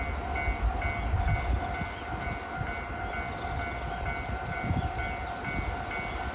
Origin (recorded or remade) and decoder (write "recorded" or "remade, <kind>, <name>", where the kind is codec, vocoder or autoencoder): recorded